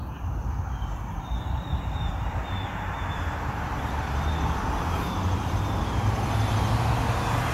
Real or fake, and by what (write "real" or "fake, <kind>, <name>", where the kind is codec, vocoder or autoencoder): real